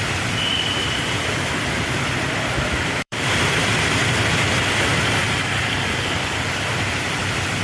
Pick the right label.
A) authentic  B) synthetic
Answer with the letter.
B